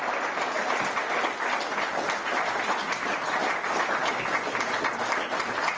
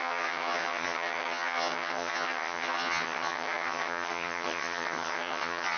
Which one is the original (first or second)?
first